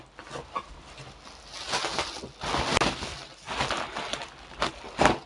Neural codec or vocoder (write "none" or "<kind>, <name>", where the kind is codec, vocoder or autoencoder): none